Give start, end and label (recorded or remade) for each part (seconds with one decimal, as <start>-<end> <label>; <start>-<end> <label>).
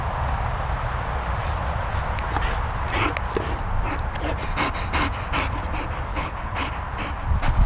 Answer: 0.0-6.1 recorded; 6.1-6.7 remade; 6.7-7.7 recorded